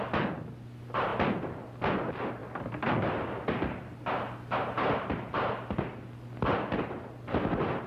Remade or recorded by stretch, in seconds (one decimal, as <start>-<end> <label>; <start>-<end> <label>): 0.0-7.9 recorded